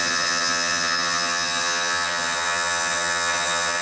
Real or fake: fake